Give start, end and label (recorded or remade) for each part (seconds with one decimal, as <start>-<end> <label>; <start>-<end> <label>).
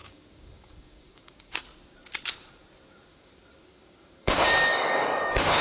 0.0-1.6 remade; 1.6-3.1 recorded; 3.1-5.6 remade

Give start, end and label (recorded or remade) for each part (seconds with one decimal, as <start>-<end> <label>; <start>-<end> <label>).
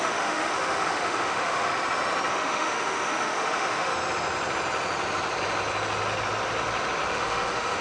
0.0-1.7 remade; 1.7-2.3 recorded; 2.3-3.9 remade; 3.9-7.1 recorded; 7.1-7.8 remade